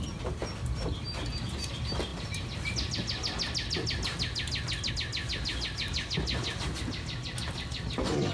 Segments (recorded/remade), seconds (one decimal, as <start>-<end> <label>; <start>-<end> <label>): 0.0-8.3 recorded